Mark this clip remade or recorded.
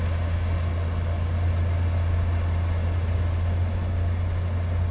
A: recorded